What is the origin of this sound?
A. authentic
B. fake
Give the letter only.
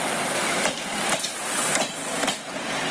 A